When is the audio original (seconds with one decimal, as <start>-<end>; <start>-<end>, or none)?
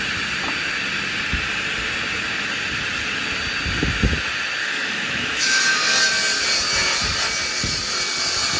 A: 0.0-4.6; 5.6-8.6